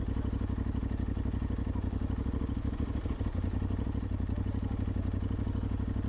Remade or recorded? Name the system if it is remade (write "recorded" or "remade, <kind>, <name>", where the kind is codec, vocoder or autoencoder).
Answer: recorded